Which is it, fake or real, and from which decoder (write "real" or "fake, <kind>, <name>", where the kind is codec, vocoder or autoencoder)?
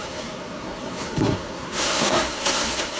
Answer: fake, codec, SNAC